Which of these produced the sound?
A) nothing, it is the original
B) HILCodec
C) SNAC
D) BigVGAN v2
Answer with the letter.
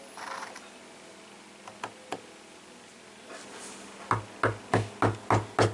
A